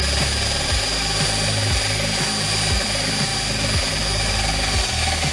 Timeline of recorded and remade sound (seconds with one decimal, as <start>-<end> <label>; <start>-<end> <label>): 0.0-5.3 recorded